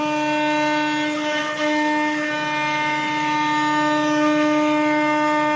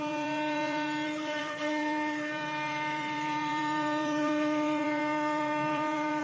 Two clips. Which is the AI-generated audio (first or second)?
second